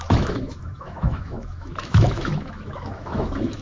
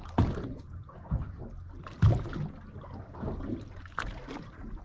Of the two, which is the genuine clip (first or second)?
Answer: second